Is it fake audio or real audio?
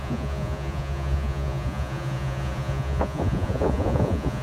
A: fake